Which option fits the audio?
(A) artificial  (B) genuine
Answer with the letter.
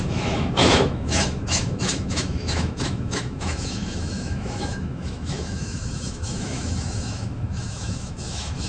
A